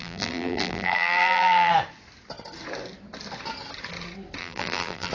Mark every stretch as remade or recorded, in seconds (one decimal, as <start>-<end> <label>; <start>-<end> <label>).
0.0-1.7 remade; 1.7-4.4 recorded; 4.4-5.1 remade

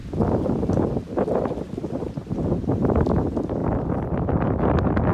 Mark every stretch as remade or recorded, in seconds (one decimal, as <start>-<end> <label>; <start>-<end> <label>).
0.0-3.6 recorded; 3.6-4.3 remade; 4.3-5.1 recorded

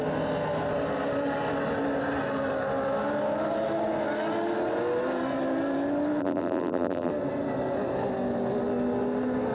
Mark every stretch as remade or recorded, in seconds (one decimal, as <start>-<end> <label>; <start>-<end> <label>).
0.0-6.2 recorded; 6.2-7.1 remade; 7.1-9.5 recorded

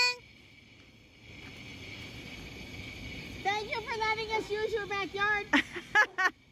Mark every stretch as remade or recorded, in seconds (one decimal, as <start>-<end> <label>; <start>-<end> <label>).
0.0-6.5 recorded

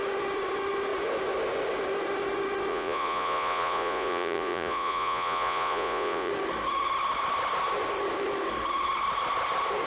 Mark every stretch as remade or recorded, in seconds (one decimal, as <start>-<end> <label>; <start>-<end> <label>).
0.0-2.7 recorded; 2.7-6.3 remade; 6.3-9.9 recorded

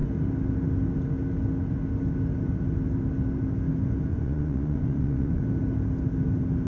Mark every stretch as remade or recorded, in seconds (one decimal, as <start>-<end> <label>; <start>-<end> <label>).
0.0-4.1 recorded; 4.1-5.4 remade; 5.4-6.7 recorded

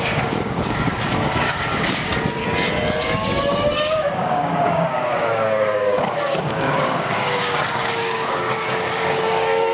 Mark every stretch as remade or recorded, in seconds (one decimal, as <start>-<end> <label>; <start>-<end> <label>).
0.0-2.4 remade; 2.4-3.0 recorded; 3.0-9.7 remade